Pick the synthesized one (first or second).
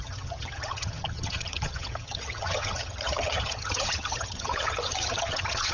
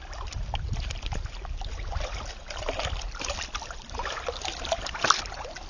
first